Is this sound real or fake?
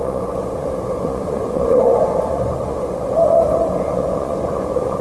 fake